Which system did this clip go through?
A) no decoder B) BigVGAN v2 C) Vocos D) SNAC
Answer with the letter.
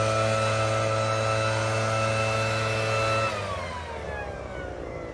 A